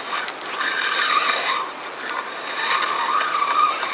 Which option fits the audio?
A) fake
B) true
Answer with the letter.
B